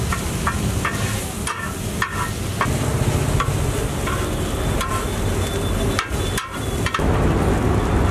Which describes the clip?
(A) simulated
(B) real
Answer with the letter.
B